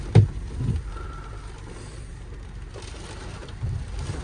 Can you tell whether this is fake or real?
fake